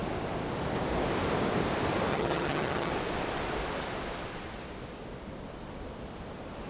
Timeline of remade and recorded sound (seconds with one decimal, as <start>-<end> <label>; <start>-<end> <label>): 0.0-2.1 recorded; 2.1-2.9 remade; 2.9-6.7 recorded